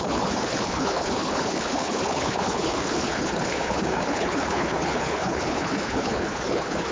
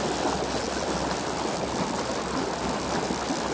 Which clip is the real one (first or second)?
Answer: second